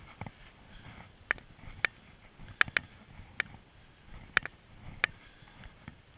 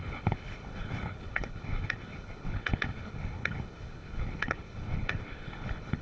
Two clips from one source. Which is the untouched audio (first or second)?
first